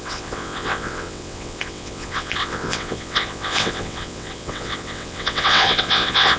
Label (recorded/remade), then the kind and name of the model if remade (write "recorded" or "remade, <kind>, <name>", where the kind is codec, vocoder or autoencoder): remade, vocoder, WaveNeXt